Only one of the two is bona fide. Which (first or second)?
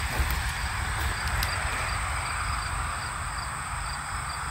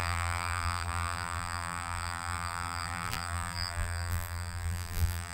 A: first